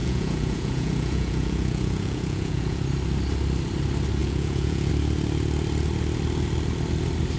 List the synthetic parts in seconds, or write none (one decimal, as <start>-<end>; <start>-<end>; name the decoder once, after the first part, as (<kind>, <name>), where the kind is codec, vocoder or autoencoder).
0.0-2.8 (vocoder, Vocos); 4.2-4.9